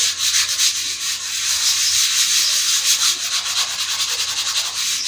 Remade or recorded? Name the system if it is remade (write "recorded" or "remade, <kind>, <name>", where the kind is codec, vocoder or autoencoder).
recorded